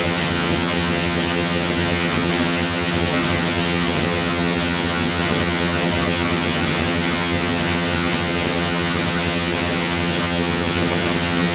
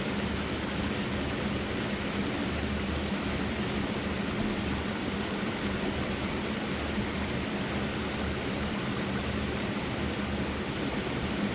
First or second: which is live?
second